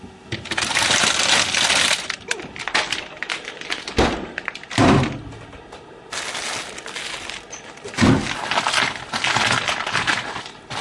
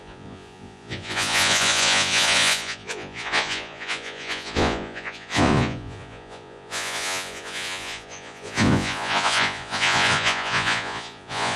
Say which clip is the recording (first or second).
first